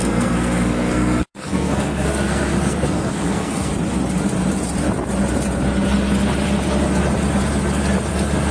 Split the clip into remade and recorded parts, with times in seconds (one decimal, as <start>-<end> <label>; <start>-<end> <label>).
0.0-3.7 remade; 3.7-8.5 recorded